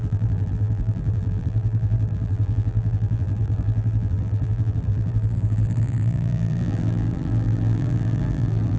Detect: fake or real fake